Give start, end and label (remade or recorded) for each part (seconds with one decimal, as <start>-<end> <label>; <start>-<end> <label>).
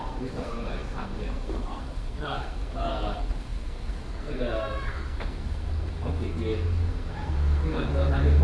0.0-8.4 remade